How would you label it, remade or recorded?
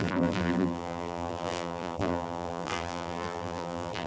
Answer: remade